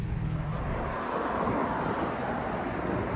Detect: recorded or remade recorded